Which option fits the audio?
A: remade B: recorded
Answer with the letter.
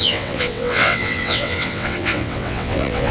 A